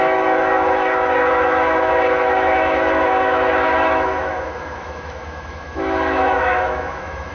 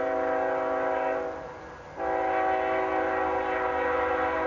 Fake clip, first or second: first